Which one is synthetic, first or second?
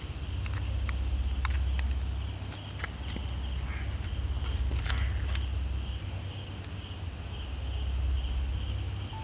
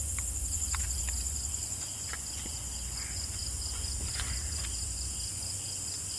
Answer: second